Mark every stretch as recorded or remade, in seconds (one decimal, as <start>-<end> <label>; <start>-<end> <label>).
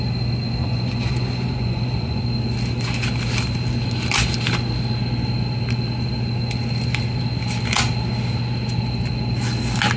0.0-0.6 recorded; 0.6-2.2 remade; 2.2-10.0 recorded